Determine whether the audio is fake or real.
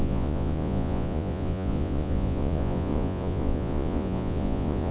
fake